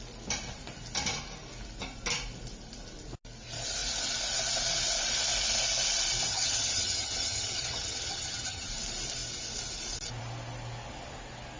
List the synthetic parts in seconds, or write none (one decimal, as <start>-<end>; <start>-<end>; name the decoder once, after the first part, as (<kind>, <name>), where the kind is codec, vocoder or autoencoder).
6.3-8.7 (vocoder, HiFi-GAN)